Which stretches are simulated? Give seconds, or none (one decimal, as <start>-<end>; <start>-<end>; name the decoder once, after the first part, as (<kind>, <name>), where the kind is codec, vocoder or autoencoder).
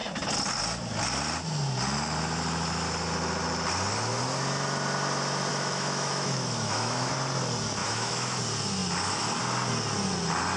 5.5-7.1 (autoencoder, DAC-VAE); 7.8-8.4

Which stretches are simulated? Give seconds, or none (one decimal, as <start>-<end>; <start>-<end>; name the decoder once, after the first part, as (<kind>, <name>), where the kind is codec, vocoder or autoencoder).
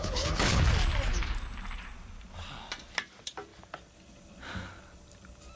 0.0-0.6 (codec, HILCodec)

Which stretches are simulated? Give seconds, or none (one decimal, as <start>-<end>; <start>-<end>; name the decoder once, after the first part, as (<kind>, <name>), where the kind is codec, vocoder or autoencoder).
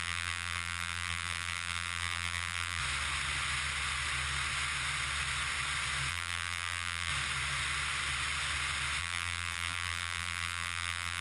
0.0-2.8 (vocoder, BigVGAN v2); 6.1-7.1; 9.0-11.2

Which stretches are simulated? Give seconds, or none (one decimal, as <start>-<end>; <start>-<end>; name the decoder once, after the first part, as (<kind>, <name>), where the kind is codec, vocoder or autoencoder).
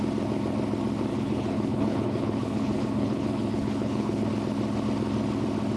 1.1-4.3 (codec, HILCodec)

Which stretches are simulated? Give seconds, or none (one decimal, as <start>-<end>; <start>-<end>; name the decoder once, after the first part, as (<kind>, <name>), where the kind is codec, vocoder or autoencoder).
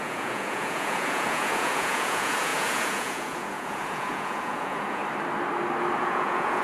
0.0-5.0 (vocoder, Vocos); 6.0-6.6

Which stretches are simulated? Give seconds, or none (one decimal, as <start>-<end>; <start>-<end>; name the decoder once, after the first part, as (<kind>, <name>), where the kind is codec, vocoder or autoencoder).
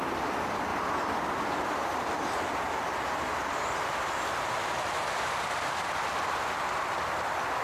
none